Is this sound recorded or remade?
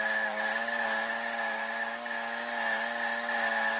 recorded